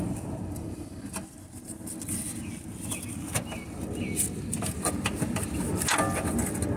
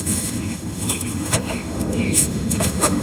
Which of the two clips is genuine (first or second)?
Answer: first